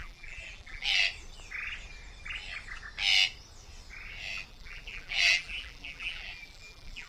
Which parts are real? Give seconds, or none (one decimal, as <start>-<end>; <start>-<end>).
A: 1.0-4.5